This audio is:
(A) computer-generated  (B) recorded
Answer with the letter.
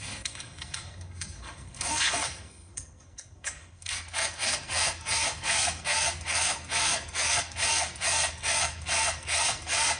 A